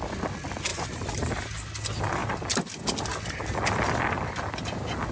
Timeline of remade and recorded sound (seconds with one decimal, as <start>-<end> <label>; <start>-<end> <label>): 0.0-0.7 recorded; 0.7-1.3 remade; 1.3-5.1 recorded